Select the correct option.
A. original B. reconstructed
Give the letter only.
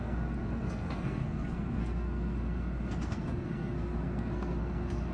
B